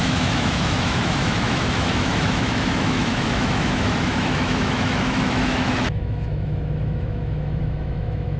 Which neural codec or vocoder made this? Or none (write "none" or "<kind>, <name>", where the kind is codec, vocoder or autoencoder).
autoencoder, DAC-VAE